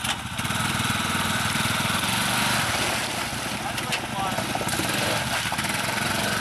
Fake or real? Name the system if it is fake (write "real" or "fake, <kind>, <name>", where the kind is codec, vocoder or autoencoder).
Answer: real